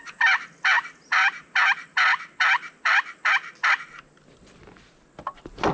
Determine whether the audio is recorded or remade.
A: recorded